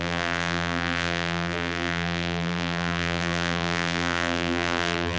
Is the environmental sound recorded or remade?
remade